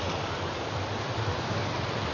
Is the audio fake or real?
fake